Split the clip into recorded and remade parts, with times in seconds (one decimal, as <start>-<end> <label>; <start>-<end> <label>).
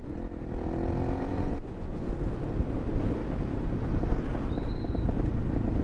0.0-1.3 recorded; 1.3-2.1 remade; 2.1-5.8 recorded